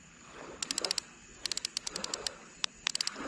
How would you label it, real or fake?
real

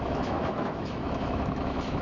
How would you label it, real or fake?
fake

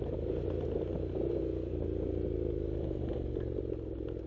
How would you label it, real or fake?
real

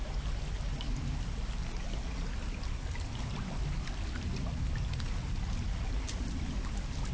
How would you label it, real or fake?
real